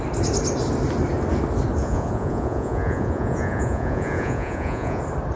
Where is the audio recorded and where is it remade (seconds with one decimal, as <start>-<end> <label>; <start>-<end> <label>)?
0.0-1.8 recorded; 1.8-5.0 remade; 5.0-5.4 recorded

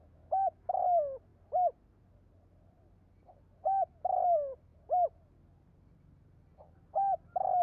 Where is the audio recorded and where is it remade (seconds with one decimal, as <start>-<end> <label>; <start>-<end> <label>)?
0.0-0.8 remade; 0.8-7.6 recorded

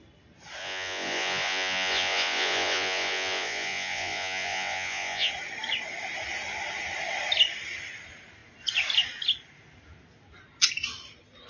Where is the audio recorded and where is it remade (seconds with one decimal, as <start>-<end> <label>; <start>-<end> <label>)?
0.0-0.6 recorded; 0.6-5.3 remade; 5.3-11.5 recorded

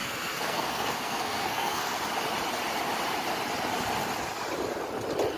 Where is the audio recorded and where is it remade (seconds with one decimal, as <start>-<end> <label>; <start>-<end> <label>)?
0.0-2.0 remade; 2.0-5.4 recorded

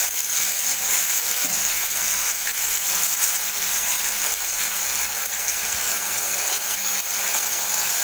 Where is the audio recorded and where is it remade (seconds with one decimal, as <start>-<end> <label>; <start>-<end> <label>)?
0.0-8.0 remade